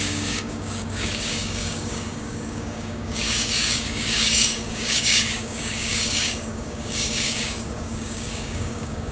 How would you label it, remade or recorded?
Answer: remade